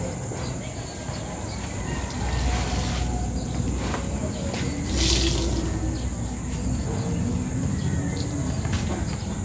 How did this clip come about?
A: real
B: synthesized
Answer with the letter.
A